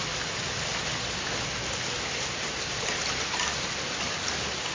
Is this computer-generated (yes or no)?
no